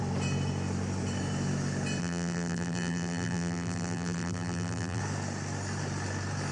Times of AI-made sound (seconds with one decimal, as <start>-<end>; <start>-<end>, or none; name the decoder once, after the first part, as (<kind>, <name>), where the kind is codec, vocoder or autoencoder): 2.0-5.0 (vocoder, BigVGAN v2)